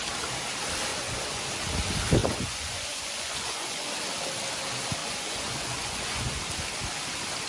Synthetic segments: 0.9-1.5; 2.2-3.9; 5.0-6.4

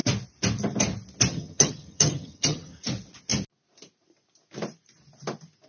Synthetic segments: 1.3-2.8